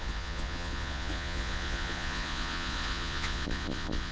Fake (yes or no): yes